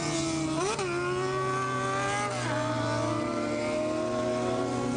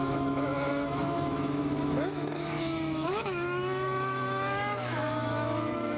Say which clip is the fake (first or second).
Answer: second